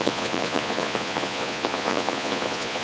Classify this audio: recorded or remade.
remade